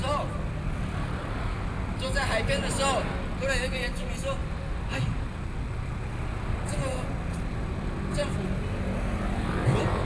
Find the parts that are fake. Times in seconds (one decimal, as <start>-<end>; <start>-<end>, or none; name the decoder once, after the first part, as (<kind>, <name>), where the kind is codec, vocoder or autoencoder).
none